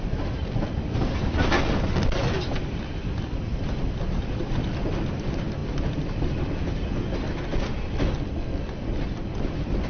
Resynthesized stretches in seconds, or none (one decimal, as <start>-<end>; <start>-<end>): none